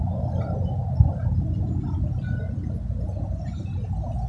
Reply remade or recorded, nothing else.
recorded